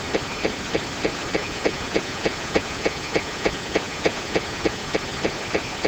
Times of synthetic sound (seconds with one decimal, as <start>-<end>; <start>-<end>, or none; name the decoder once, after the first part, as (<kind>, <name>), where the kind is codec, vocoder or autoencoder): 1.4-4.9 (vocoder, Vocos)